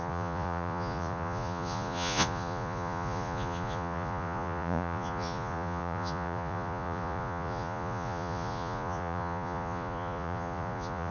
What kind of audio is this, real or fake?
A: fake